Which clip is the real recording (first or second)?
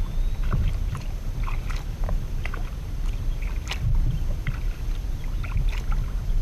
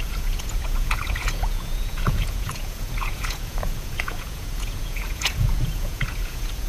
first